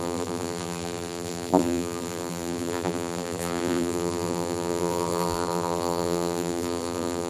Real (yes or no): no